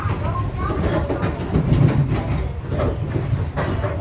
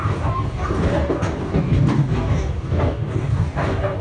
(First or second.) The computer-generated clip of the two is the second